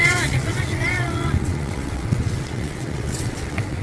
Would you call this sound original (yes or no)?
no